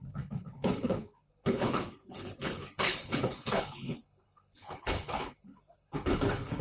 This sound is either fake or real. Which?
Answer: fake